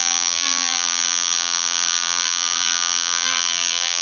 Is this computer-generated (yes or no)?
yes